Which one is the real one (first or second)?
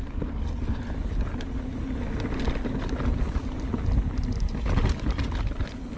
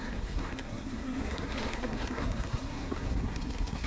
first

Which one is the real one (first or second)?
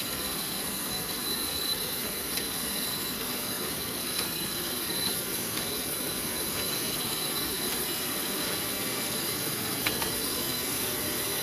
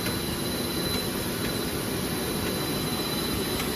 second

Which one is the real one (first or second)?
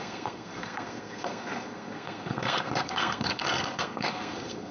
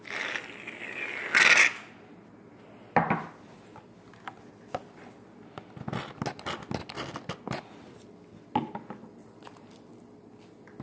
second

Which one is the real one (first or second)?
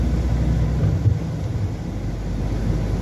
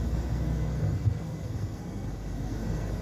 first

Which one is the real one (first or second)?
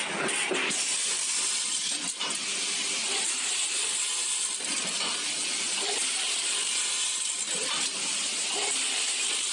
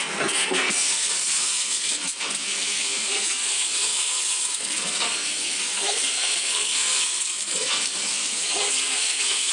first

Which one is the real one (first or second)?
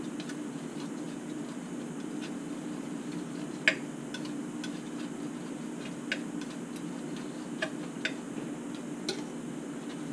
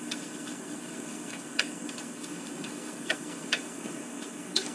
first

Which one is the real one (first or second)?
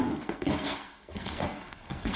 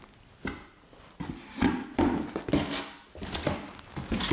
second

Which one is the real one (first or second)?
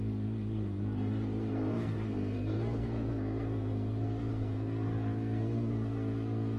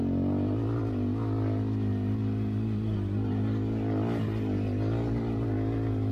second